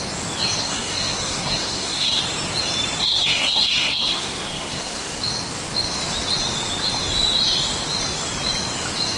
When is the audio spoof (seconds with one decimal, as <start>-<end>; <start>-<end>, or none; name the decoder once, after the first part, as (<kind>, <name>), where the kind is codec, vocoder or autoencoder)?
0.6-2.2 (codec, SNAC); 3.0-5.2